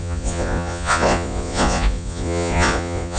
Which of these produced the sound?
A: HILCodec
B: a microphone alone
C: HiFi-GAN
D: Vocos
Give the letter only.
D